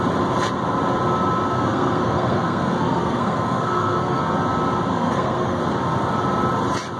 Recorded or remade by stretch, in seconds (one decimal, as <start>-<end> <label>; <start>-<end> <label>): 0.0-1.5 recorded; 1.5-4.2 remade; 4.2-4.9 recorded; 4.9-5.6 remade; 5.6-7.0 recorded